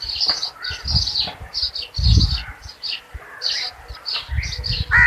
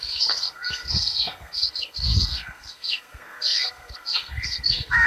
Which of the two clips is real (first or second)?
first